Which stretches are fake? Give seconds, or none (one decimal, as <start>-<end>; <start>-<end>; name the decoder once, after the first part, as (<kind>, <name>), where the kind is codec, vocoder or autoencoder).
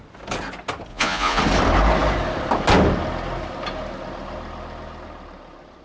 0.9-1.4 (vocoder, Vocos)